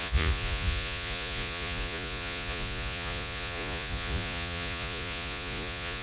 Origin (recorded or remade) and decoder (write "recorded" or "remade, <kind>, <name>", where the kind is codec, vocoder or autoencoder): remade, vocoder, Vocos